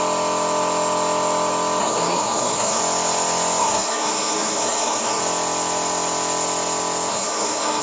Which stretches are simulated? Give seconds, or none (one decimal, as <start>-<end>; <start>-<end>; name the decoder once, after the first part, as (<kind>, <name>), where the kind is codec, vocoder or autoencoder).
1.8-2.8 (codec, SNAC); 3.6-5.2; 7.1-7.8